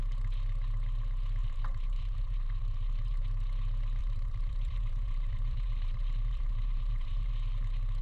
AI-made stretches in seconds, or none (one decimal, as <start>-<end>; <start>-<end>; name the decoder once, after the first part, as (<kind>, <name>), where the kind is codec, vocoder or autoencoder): 1.4-3.2 (vocoder, BigVGAN v2); 4.0-7.3